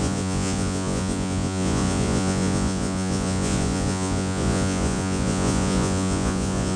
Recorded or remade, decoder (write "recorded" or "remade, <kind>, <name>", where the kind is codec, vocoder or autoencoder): remade, vocoder, Vocos